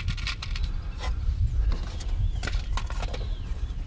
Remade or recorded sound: recorded